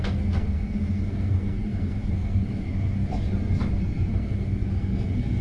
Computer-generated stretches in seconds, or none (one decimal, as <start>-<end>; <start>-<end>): 0.0-3.1; 3.7-5.4